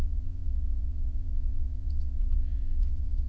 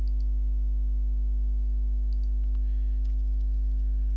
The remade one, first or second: first